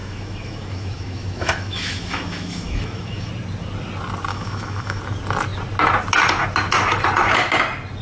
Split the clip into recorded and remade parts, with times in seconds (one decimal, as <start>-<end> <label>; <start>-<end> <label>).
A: 0.0-3.3 remade; 3.3-4.3 recorded; 4.3-5.0 remade; 5.0-8.0 recorded

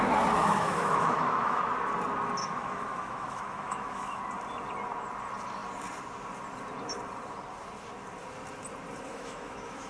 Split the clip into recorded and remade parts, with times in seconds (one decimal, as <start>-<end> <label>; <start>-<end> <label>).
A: 0.0-0.4 recorded; 0.4-1.6 remade; 1.6-2.4 recorded; 2.4-4.2 remade; 4.2-9.1 recorded; 9.1-9.9 remade

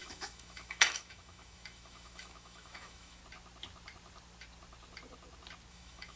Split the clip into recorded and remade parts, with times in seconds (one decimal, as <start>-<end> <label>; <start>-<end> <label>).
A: 0.0-3.2 remade; 3.2-5.7 recorded; 5.7-6.2 remade

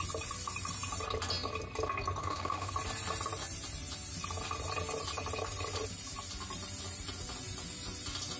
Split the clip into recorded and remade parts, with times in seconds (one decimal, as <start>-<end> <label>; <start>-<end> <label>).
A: 0.0-2.2 recorded; 2.2-2.7 remade; 2.7-8.4 recorded

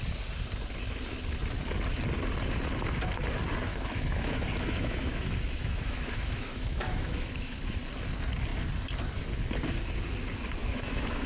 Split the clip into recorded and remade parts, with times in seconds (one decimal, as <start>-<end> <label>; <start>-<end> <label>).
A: 0.0-3.7 recorded; 3.7-7.7 remade; 7.7-10.6 recorded; 10.6-11.3 remade

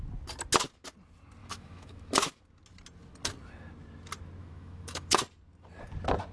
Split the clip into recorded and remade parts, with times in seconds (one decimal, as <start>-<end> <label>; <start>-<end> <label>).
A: 0.0-1.4 recorded; 1.4-2.4 remade; 2.4-4.4 recorded; 4.4-5.2 remade; 5.2-6.3 recorded

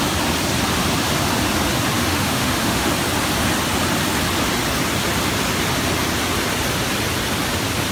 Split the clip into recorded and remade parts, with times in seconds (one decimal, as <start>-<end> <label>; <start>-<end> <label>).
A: 0.0-2.0 recorded; 2.0-2.9 remade; 2.9-7.9 recorded